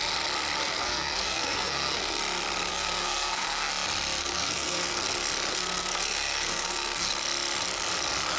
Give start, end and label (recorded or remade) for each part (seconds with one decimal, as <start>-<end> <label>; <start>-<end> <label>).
0.0-0.6 recorded; 0.6-2.2 remade; 2.2-2.7 recorded; 2.7-3.7 remade; 3.7-4.2 recorded; 4.2-5.0 remade; 5.0-5.5 recorded; 5.5-7.1 remade; 7.1-8.4 recorded